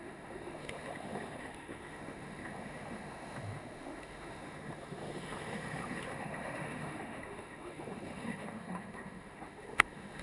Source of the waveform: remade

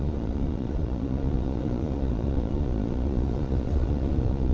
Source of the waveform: remade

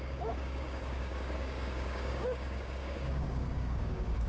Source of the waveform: remade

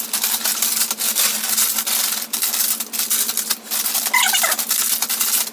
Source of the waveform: recorded